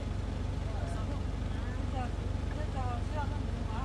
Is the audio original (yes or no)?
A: yes